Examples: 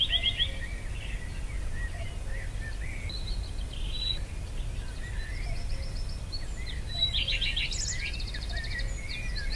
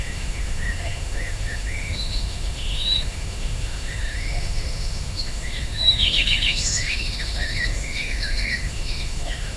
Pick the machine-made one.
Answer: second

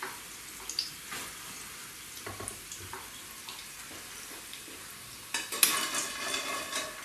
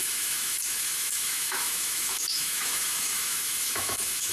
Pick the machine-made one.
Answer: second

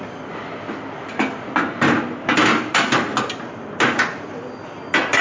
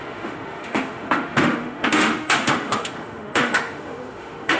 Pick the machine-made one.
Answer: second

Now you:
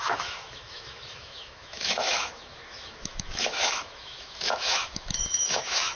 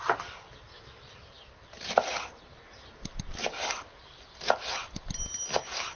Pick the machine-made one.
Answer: first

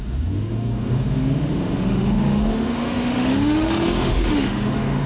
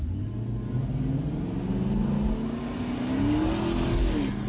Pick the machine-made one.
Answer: first